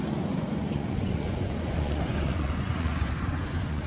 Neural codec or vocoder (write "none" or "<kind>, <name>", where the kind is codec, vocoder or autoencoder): vocoder, Vocos